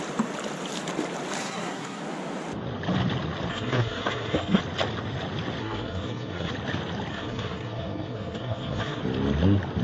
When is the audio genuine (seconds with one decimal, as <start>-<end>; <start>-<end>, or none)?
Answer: 0.0-1.4; 2.0-3.5; 4.6-5.6; 6.5-7.1; 9.0-9.8